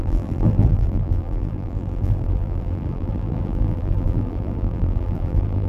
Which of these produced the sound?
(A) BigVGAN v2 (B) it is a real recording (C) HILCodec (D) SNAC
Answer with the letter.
A